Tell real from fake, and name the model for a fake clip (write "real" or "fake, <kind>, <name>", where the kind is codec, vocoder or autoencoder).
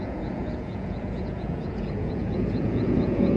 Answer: fake, vocoder, Vocos